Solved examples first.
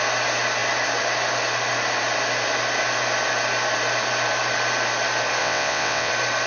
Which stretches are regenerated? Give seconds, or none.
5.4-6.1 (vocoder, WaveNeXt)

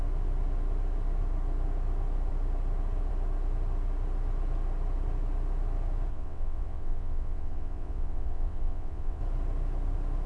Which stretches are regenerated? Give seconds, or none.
6.1-9.2 (vocoder, WaveNeXt)